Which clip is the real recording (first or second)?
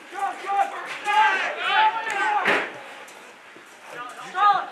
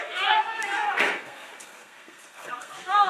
first